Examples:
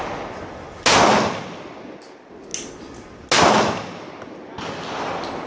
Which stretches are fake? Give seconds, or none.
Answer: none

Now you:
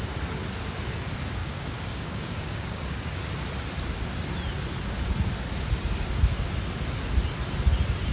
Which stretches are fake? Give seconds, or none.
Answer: 1.4-3.3

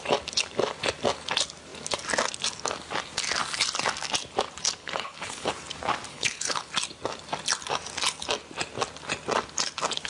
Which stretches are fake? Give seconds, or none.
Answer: 4.8-5.5; 6.1-6.7

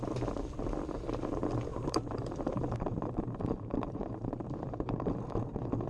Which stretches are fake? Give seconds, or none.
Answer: 1.7-5.2

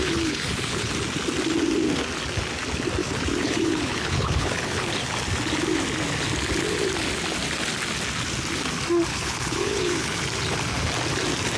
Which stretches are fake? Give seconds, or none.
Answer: 0.0-0.9; 3.0-4.9; 9.1-10.2